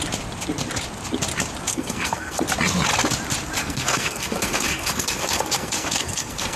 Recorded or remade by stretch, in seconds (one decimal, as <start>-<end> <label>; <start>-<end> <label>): 0.0-1.7 recorded; 1.7-2.4 remade; 2.4-3.6 recorded; 3.6-6.6 remade